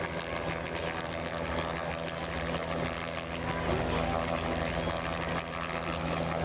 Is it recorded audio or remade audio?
recorded